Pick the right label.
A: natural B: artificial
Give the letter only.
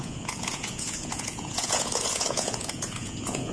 B